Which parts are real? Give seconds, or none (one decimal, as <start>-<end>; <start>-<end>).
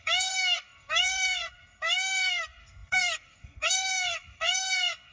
none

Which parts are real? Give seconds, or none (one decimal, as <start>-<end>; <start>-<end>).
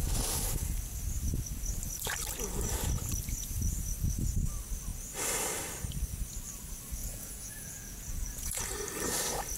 0.0-7.0; 8.6-9.6